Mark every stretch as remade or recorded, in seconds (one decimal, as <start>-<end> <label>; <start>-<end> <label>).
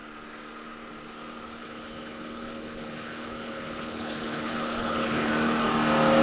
0.0-1.6 recorded; 1.6-5.3 remade; 5.3-6.2 recorded